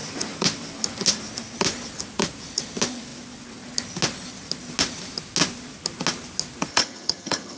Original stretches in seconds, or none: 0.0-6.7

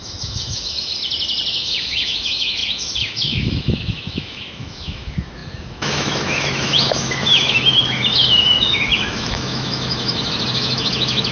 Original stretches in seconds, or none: 0.9-1.5

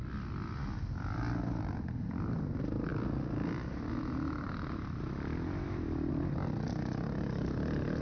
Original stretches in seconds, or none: 0.0-8.0

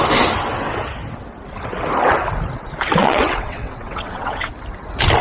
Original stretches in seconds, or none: 0.0-3.0; 4.5-5.2

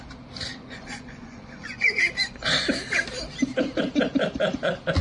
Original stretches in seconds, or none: 0.0-0.5; 2.0-5.0